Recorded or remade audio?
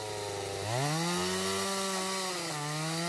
recorded